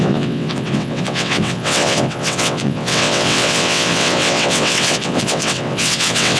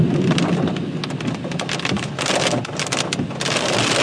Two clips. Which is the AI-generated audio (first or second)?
first